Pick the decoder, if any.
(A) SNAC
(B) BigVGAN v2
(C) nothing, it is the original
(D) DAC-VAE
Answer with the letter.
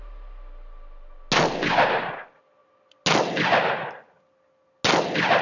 C